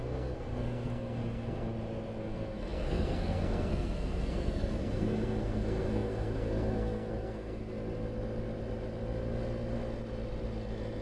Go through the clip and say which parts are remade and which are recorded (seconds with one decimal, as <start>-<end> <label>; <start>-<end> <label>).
0.0-1.7 remade; 1.7-2.2 recorded; 2.2-7.6 remade; 7.6-11.0 recorded